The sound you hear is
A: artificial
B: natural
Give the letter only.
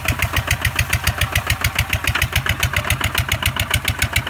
B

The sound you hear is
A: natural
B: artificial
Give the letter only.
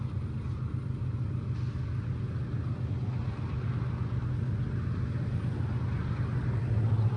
A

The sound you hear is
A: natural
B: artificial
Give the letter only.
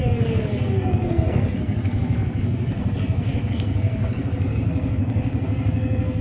B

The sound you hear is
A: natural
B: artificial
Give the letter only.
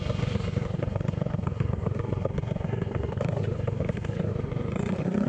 B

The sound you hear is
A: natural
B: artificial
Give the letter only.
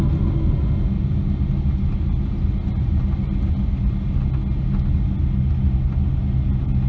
A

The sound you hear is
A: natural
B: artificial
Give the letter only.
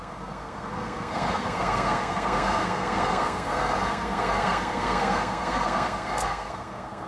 B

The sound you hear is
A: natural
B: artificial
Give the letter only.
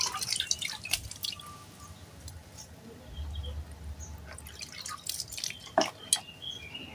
A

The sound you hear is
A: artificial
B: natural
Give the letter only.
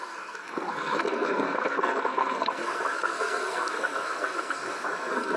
A